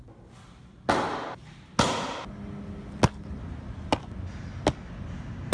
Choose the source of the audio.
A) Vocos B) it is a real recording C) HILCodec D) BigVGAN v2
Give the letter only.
B